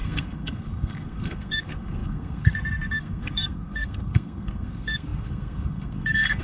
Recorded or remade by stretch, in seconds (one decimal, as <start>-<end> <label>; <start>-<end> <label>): 0.0-6.4 remade